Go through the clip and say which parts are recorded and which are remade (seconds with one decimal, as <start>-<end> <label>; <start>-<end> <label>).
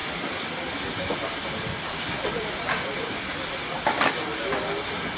0.0-5.2 recorded